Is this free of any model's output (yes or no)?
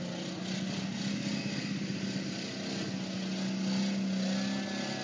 yes